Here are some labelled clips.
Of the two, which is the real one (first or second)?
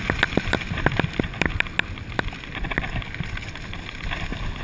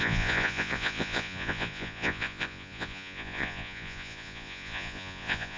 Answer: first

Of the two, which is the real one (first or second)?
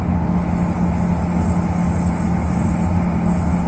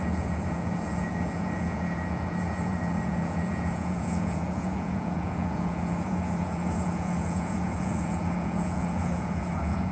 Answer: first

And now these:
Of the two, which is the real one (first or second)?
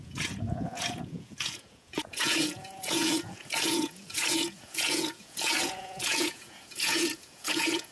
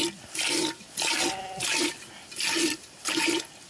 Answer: second